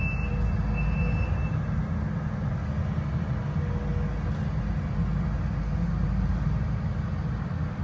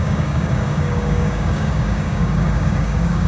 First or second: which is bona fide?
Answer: first